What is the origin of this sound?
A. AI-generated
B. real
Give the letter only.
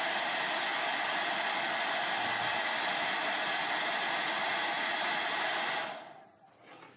B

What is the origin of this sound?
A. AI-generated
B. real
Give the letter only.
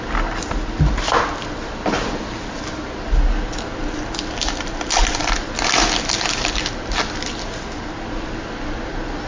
B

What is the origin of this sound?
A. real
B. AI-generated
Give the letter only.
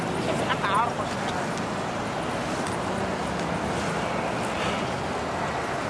A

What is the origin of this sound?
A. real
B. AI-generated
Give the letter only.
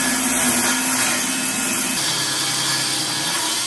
A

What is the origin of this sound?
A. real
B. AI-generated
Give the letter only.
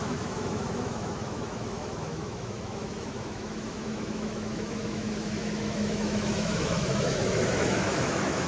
B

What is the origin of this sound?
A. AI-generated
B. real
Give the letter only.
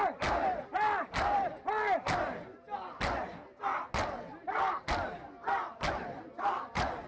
B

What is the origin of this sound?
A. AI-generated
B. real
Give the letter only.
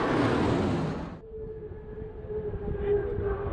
B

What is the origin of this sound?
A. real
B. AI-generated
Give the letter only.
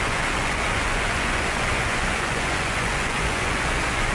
B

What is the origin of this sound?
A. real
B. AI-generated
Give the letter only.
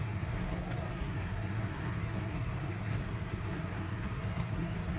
B